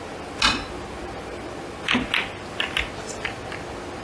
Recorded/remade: recorded